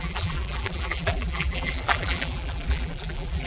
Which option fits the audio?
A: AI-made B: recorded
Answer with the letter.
A